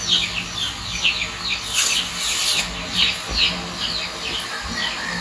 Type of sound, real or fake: real